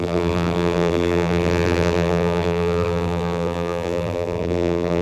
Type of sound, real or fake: fake